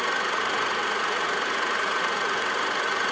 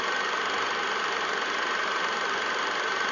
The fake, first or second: first